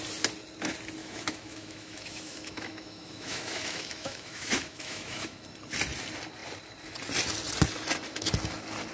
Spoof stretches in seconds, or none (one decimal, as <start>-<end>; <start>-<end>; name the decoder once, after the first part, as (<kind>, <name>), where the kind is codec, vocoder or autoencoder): 1.0-5.4 (autoencoder, DAC-VAE)